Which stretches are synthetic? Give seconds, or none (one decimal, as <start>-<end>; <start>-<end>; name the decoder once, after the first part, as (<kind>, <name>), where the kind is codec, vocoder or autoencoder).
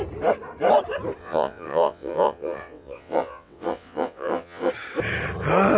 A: 1.2-4.7 (vocoder, WaveNeXt)